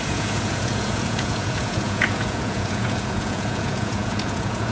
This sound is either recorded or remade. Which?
remade